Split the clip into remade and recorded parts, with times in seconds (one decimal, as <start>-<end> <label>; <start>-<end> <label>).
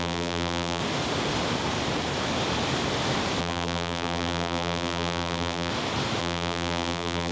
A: 0.0-0.8 remade; 0.8-3.4 recorded; 3.4-5.7 remade; 5.7-6.2 recorded; 6.2-7.3 remade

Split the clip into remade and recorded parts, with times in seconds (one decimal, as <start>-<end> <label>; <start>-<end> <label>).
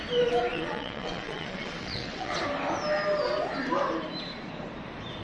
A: 0.0-0.5 recorded; 0.5-2.4 remade; 2.4-5.2 recorded